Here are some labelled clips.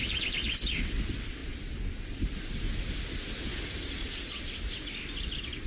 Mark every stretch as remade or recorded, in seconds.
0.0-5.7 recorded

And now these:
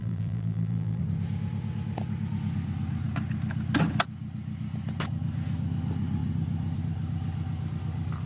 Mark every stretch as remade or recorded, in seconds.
0.0-1.0 remade; 1.0-8.3 recorded

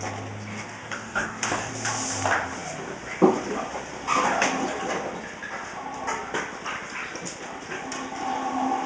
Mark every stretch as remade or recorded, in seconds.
0.0-0.5 recorded; 0.5-1.7 remade; 1.7-8.9 recorded